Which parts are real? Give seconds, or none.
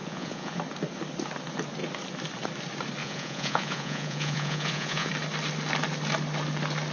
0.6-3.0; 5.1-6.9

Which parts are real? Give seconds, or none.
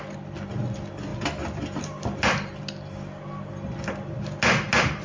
0.0-5.0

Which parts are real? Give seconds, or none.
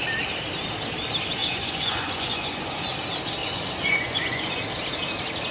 0.0-1.4; 2.9-3.4; 4.6-5.5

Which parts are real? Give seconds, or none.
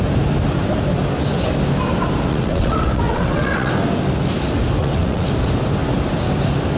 0.0-2.3; 3.7-4.8; 5.3-6.8